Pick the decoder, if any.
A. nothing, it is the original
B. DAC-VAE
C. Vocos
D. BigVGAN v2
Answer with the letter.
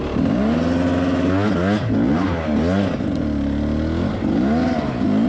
A